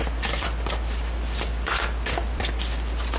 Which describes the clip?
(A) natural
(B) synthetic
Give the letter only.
B